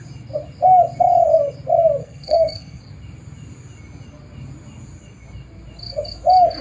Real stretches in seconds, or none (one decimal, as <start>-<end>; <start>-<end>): 0.0-2.0; 2.8-6.6